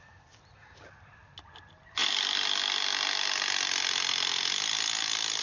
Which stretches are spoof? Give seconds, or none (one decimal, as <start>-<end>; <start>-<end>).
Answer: none